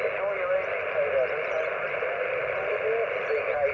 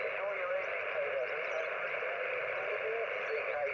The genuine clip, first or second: first